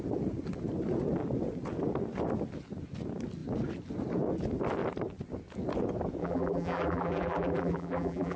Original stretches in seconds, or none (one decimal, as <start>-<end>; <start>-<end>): 0.0-6.2